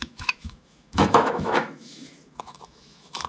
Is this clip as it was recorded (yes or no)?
no